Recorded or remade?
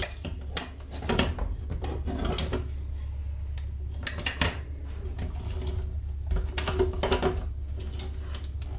recorded